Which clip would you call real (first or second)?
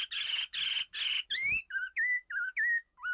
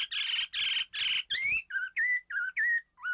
second